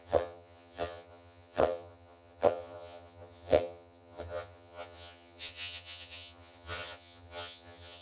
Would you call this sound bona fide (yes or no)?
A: no